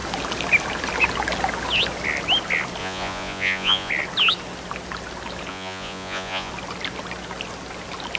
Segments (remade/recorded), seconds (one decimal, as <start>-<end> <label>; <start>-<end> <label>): 0.0-2.8 recorded; 2.8-3.9 remade; 3.9-5.5 recorded; 5.5-6.5 remade; 6.5-8.2 recorded